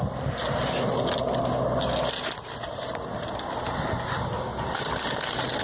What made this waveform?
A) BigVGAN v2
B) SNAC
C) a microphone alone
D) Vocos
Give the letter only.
C